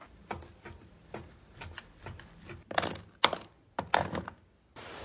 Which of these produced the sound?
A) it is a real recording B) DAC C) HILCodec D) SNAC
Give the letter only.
A